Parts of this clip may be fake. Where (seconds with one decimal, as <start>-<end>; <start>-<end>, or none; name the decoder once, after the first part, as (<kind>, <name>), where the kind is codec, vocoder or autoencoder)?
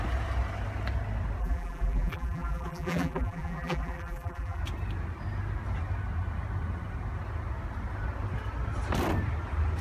1.4-4.6 (vocoder, BigVGAN v2)